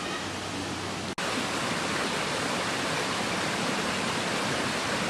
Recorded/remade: recorded